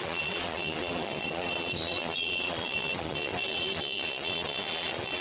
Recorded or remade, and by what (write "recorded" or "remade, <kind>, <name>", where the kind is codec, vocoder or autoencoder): remade, vocoder, Vocos